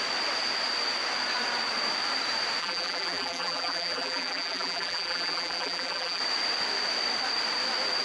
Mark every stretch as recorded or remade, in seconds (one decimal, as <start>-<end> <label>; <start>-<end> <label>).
0.0-2.6 recorded; 2.6-6.2 remade; 6.2-8.0 recorded